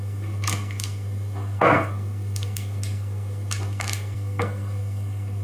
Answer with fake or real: fake